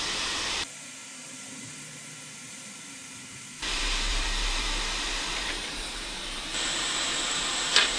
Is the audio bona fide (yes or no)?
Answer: no